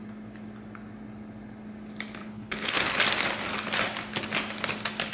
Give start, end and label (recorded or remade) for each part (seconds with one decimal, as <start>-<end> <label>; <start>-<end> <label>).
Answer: 0.0-2.2 recorded; 2.2-2.9 remade; 2.9-5.1 recorded